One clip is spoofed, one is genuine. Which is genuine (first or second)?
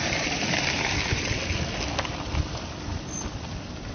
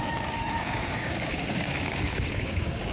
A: first